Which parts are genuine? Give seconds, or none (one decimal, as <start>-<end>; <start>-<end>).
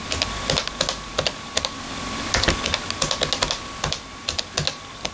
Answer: 0.0-5.1